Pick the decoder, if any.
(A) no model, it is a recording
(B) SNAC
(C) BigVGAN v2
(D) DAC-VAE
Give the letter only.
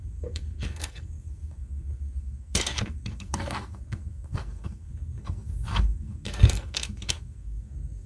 B